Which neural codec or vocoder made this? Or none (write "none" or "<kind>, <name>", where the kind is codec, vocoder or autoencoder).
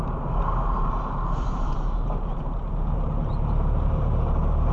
vocoder, BigVGAN v2